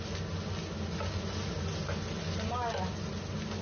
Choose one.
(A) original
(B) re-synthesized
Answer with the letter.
A